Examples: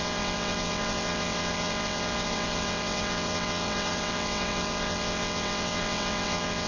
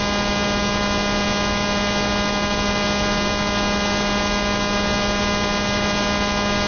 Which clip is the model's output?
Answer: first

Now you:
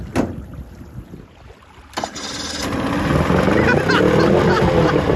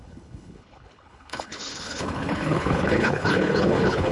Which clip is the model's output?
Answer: second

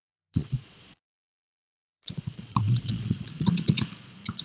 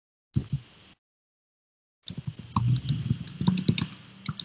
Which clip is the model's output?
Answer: first